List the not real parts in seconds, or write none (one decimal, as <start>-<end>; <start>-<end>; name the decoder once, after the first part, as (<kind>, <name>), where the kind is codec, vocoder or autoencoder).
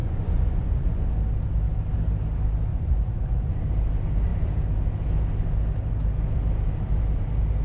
0.0-1.0 (vocoder, Vocos); 2.7-3.5